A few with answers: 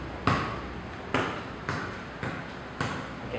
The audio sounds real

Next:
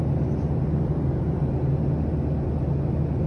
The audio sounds real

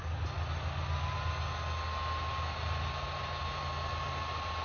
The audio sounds real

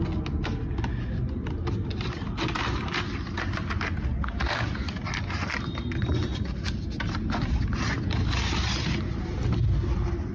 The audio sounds real